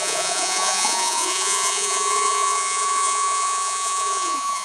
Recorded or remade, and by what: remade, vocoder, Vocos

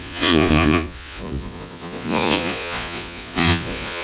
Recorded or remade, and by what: remade, vocoder, Vocos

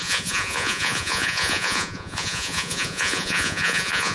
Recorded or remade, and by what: remade, vocoder, Vocos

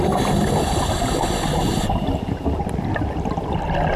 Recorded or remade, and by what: recorded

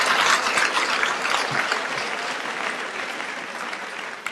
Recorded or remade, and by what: recorded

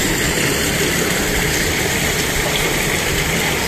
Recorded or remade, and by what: recorded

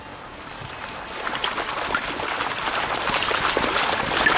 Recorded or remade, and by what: recorded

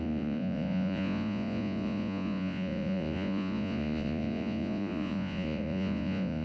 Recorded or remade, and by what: remade, vocoder, Vocos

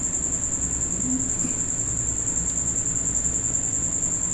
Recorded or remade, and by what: recorded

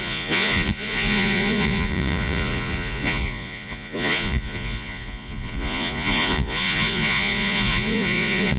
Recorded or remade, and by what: remade, vocoder, Vocos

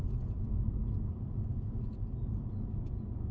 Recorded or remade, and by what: remade, vocoder, Vocos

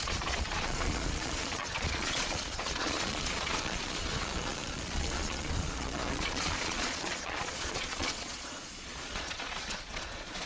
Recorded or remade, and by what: remade, vocoder, Vocos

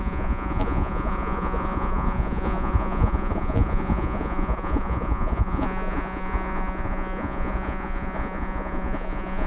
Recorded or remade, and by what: remade, vocoder, Vocos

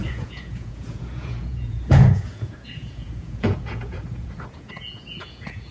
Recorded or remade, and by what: remade, vocoder, Vocos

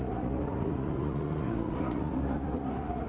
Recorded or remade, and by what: remade, vocoder, Vocos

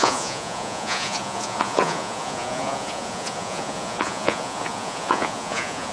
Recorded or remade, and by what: remade, vocoder, Vocos